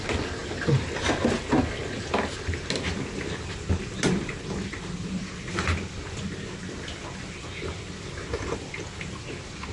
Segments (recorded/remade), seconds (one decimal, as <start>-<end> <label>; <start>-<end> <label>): 0.0-9.7 recorded